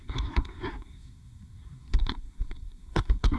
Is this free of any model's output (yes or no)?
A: no